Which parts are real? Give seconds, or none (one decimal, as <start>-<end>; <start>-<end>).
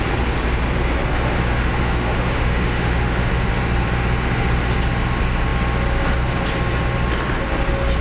0.0-1.1; 3.3-8.0